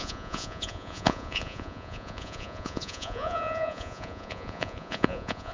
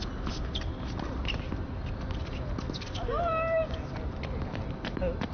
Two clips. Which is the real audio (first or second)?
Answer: second